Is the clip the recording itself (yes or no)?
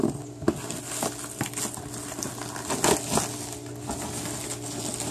yes